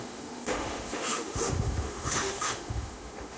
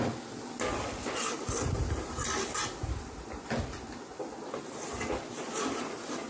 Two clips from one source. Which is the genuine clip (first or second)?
second